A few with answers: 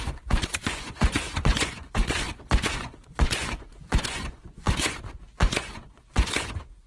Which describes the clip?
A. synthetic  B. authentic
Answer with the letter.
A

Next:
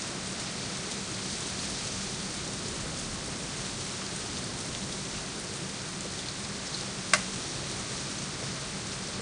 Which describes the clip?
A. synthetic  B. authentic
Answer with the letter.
B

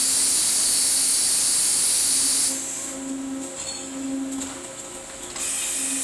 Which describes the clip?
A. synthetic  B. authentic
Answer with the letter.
B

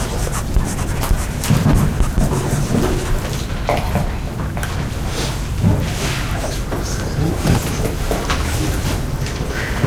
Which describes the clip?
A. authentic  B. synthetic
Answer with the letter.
A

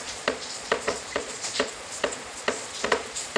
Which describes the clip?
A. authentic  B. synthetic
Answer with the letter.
B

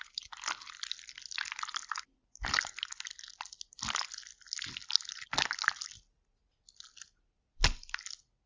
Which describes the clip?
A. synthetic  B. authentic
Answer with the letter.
B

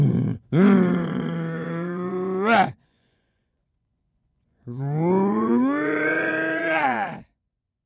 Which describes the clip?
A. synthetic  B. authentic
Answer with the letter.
A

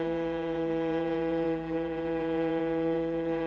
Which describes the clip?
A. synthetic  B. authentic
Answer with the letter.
A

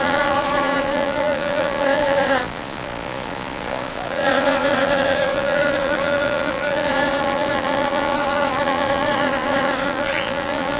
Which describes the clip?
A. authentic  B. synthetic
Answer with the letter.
B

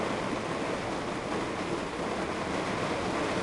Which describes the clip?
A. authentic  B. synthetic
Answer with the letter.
A